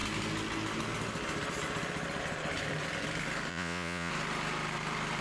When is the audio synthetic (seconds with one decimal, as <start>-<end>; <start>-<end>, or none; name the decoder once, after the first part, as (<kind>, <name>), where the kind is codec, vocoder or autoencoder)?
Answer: 3.5-4.1 (vocoder, Vocos)